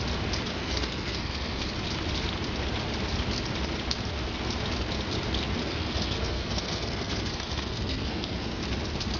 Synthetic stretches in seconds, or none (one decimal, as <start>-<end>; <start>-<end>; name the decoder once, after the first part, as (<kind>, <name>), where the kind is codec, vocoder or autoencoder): 0.5-1.7 (codec, SNAC); 5.6-8.6